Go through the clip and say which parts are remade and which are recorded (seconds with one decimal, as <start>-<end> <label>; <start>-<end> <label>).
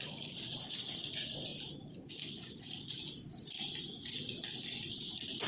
0.0-0.6 recorded; 0.6-1.1 remade; 1.1-5.5 recorded